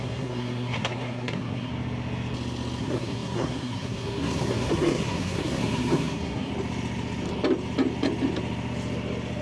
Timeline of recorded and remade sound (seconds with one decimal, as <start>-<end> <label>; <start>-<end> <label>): 0.0-1.7 remade; 1.7-2.8 recorded; 2.8-6.5 remade; 6.5-9.4 recorded